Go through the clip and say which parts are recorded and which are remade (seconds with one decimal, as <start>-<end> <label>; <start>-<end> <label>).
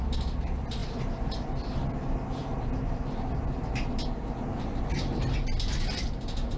0.0-6.6 recorded